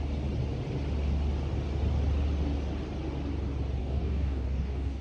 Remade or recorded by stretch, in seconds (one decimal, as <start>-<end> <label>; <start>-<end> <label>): 0.0-3.8 recorded; 3.8-5.0 remade